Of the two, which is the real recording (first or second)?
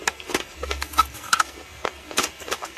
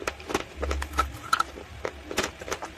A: second